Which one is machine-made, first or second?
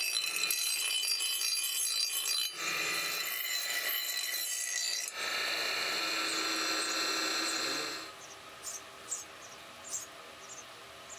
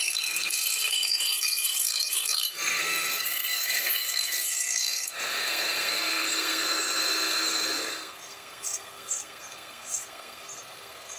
second